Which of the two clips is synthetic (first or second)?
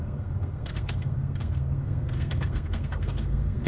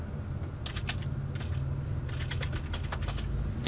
first